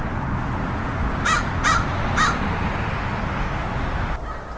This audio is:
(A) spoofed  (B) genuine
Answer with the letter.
B